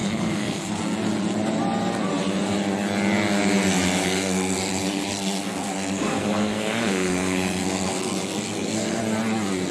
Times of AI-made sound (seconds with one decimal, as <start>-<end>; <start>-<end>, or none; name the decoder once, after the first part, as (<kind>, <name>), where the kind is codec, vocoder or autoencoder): 0.0-0.8 (codec, SNAC); 4.0-9.0